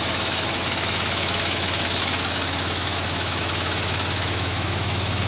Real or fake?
fake